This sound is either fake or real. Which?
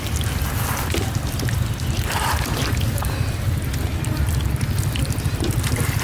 real